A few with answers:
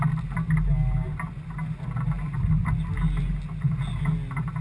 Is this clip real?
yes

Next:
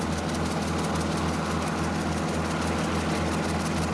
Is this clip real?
yes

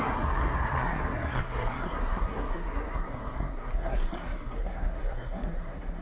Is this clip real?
no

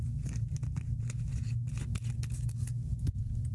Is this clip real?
yes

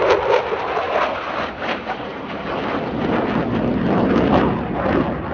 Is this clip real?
yes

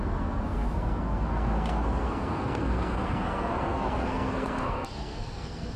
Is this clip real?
no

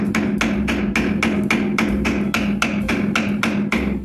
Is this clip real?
yes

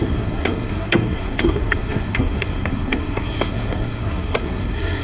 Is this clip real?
no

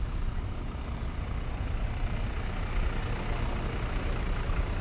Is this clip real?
yes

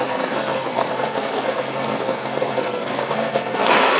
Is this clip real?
no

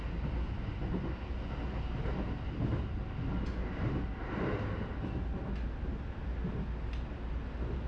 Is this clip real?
yes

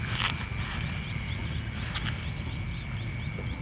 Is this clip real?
yes